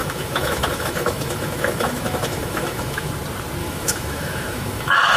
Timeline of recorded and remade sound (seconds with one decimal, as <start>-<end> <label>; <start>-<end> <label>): 0.0-3.1 remade; 3.1-3.6 recorded; 3.6-5.2 remade